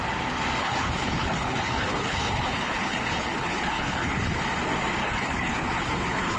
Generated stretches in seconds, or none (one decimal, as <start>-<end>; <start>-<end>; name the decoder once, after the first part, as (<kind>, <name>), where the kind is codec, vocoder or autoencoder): 0.6-4.4 (codec, HILCodec); 5.0-6.4